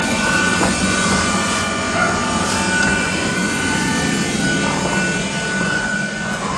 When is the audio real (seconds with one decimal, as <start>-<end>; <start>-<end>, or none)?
2.2-2.8; 3.9-5.6